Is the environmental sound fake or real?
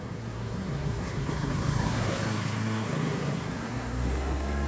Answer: fake